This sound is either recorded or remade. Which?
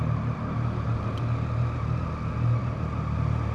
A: recorded